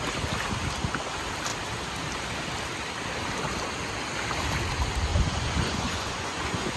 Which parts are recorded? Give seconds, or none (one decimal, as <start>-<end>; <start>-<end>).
0.0-5.1